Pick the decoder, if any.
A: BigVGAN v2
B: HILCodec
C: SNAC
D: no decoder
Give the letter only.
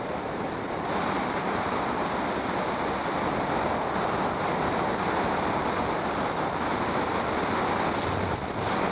D